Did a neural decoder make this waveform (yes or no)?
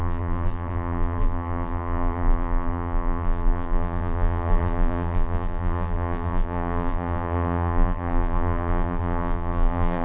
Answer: yes